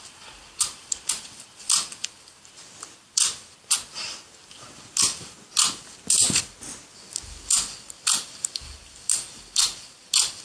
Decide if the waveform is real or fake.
real